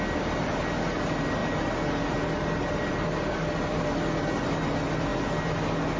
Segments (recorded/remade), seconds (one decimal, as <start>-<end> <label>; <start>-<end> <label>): 0.0-6.0 recorded